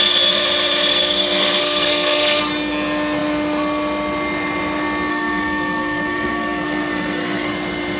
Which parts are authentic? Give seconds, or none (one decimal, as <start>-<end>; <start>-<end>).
0.0-0.9; 2.4-5.1; 7.5-8.0